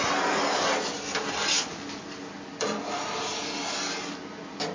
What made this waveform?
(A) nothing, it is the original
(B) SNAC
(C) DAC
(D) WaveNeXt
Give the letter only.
A